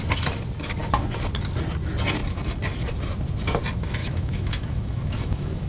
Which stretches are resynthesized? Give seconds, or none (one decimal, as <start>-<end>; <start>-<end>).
4.0-5.7